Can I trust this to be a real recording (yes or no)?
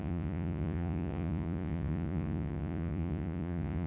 no